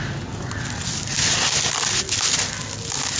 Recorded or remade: recorded